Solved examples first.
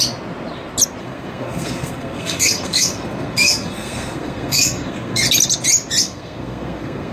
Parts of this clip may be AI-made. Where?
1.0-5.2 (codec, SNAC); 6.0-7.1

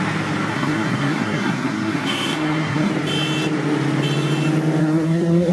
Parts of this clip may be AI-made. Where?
0.5-2.9 (codec, SNAC); 4.8-5.5